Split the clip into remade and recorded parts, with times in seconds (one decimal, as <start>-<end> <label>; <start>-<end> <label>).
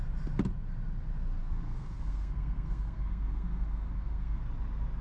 0.0-1.4 recorded; 1.4-4.4 remade; 4.4-5.0 recorded